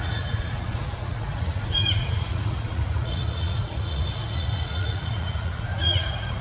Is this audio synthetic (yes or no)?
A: yes